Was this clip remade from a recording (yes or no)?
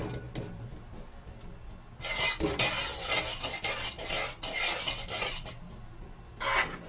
no